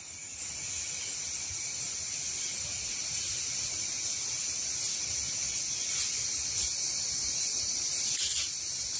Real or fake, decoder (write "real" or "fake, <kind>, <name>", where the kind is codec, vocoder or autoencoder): real